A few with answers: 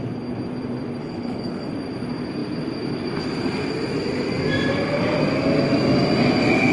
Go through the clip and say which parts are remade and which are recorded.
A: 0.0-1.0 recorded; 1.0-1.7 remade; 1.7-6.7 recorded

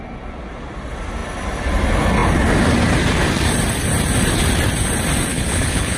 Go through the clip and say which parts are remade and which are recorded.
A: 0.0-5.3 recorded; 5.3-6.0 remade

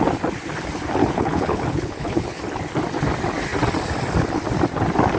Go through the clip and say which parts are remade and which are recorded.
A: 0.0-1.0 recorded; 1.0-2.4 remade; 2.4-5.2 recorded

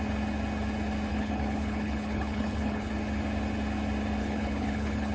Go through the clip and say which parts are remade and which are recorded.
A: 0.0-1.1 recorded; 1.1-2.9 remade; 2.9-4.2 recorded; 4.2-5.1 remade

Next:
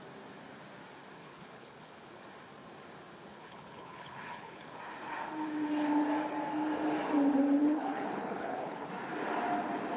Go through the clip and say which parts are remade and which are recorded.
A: 0.0-1.2 recorded; 1.2-2.2 remade; 2.2-3.3 recorded; 3.3-4.8 remade; 4.8-7.6 recorded; 7.6-8.9 remade; 8.9-10.0 recorded

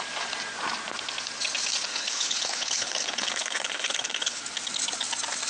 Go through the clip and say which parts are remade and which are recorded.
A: 0.0-1.9 recorded; 1.9-4.4 remade; 4.4-5.5 recorded

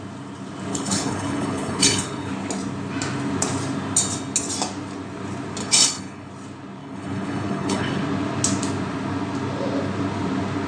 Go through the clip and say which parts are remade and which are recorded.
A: 0.0-0.7 recorded; 0.7-2.3 remade; 2.3-5.6 recorded; 5.6-6.3 remade; 6.3-6.8 recorded; 6.8-8.0 remade; 8.0-10.7 recorded

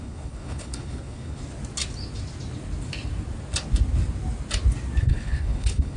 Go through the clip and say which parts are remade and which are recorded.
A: 0.0-1.4 remade; 1.4-5.0 recorded; 5.0-6.0 remade